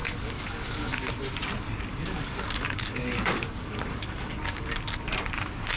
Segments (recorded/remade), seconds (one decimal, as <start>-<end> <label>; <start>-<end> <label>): 0.0-1.2 remade; 1.2-1.9 recorded; 1.9-4.8 remade; 4.8-5.8 recorded